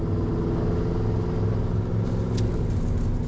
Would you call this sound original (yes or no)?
yes